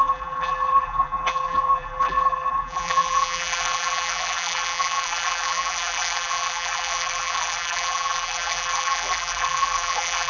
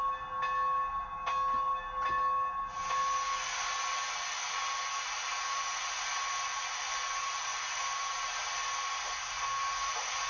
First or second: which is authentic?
second